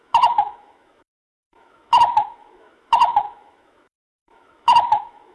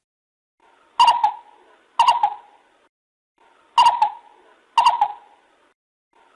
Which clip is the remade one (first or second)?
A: first